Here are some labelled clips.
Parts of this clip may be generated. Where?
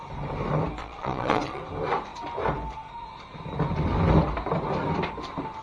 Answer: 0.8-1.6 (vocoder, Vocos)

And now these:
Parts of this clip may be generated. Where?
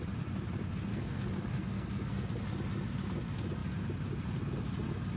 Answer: 0.9-2.3 (codec, SNAC)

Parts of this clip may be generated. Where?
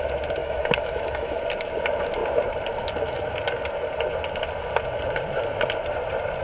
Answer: 0.4-1.4 (autoencoder, DAC-VAE)